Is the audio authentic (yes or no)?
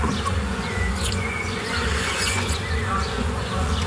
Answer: no